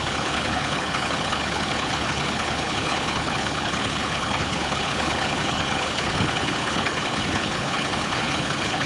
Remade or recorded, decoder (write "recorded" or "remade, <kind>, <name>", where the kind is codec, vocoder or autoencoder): remade, codec, HILCodec